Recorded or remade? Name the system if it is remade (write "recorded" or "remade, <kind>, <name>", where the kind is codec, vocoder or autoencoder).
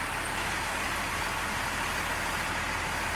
recorded